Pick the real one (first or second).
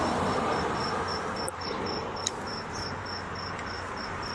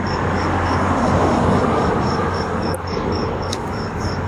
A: first